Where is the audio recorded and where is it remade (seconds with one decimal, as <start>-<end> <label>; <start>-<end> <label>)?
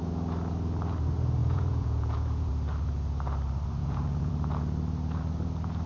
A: 0.0-1.4 recorded; 1.4-2.5 remade; 2.5-3.8 recorded; 3.8-4.3 remade; 4.3-5.9 recorded